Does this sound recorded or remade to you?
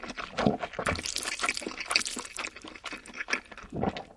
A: recorded